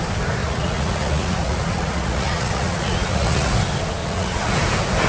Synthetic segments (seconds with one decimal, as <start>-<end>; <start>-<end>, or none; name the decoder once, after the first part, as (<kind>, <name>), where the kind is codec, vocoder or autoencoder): 0.4-3.5 (vocoder, Vocos); 4.0-4.5